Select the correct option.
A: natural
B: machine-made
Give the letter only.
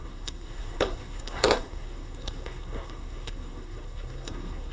B